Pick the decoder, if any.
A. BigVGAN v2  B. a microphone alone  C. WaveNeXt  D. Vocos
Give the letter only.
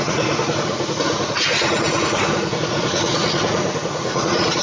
D